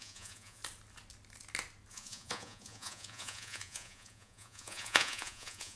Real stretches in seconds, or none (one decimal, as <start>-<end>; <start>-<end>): 0.6-1.9